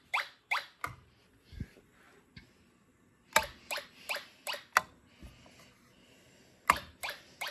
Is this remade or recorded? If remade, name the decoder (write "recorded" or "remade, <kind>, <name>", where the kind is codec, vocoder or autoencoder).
recorded